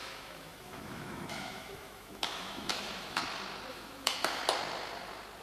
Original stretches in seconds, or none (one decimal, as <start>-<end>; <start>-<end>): 3.2-3.7; 4.4-5.4